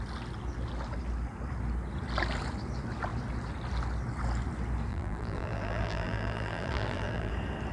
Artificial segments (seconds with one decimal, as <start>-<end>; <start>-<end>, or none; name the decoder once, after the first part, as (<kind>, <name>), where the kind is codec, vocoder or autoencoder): 4.9-7.3 (vocoder, BigVGAN v2)